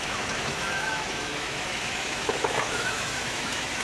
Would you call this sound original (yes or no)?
no